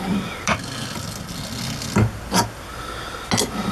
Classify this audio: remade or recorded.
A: recorded